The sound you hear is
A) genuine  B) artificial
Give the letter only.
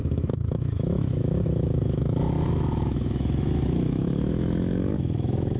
B